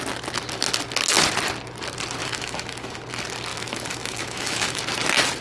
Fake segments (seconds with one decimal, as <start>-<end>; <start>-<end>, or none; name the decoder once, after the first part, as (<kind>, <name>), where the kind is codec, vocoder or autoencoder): 2.2-3.1 (autoencoder, DAC-VAE); 3.5-4.8